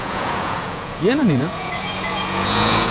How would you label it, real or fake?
fake